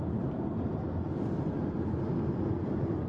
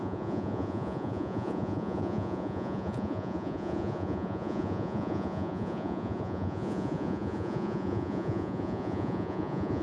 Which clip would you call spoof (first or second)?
second